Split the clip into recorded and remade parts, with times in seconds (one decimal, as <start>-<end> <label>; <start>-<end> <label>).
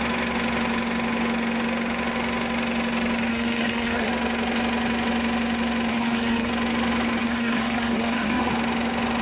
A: 0.0-3.3 recorded; 3.3-4.1 remade; 4.1-5.9 recorded; 5.9-6.5 remade; 6.5-7.2 recorded; 7.2-8.5 remade; 8.5-9.2 recorded